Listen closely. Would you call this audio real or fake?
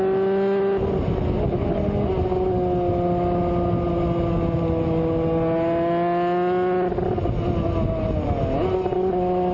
real